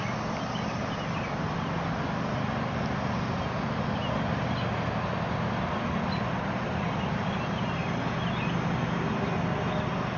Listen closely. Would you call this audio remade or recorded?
recorded